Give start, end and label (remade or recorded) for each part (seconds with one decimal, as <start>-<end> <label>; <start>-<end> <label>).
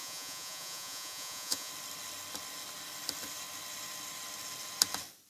0.0-1.7 remade; 1.7-5.3 recorded